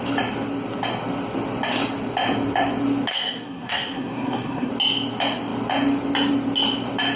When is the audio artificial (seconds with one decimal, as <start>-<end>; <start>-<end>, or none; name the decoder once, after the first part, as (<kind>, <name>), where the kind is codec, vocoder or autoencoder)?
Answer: 3.1-4.7 (codec, SNAC)